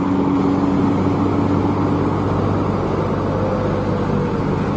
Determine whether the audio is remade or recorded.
recorded